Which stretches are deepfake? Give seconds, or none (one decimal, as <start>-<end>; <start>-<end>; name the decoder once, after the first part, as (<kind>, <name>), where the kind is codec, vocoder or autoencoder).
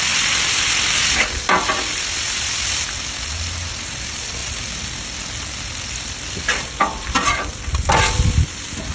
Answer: none